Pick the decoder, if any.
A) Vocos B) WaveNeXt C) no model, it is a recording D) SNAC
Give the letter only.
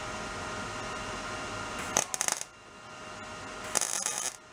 C